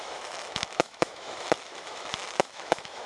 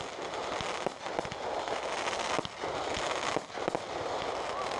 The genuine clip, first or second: second